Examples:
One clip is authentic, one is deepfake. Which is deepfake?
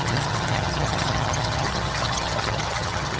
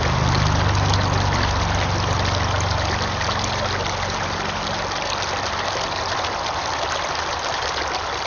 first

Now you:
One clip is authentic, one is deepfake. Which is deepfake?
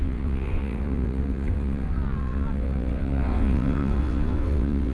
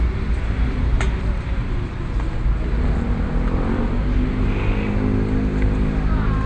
first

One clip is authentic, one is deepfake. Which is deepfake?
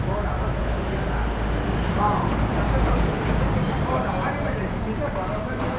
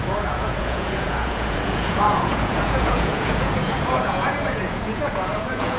second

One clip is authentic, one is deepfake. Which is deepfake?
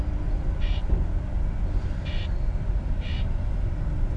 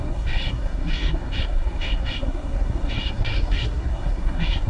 second